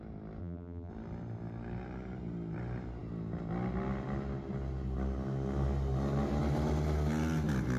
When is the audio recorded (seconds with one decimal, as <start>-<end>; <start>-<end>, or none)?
0.0-0.4; 0.9-7.8